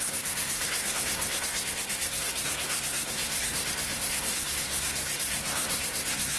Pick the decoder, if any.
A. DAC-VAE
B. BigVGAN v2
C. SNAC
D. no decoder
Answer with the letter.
C